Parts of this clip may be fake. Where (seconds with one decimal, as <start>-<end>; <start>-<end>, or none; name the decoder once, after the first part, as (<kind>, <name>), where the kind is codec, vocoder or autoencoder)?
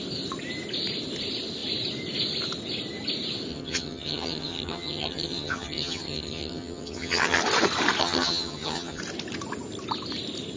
3.5-7.4 (vocoder, HiFi-GAN); 8.0-9.0